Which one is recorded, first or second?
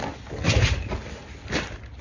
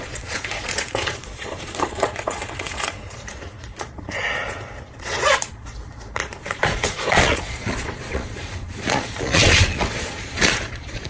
first